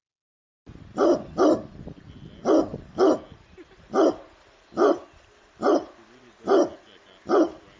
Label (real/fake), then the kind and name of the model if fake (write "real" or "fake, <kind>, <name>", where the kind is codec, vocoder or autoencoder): real